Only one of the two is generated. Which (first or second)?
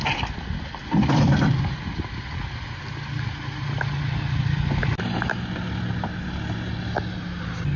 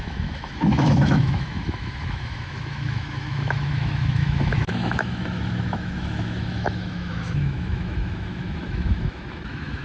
second